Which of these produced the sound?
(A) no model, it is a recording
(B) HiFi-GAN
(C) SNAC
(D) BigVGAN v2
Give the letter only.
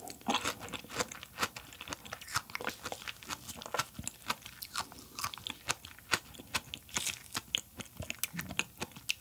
A